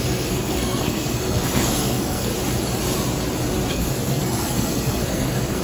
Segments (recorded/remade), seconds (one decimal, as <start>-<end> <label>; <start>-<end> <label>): 0.0-2.3 remade; 2.3-3.7 recorded; 3.7-5.6 remade